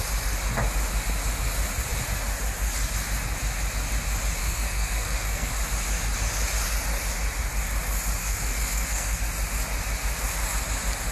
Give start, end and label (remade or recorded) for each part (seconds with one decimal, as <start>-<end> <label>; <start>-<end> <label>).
0.0-4.4 recorded; 4.4-5.5 remade; 5.5-8.2 recorded; 8.2-9.2 remade; 9.2-11.1 recorded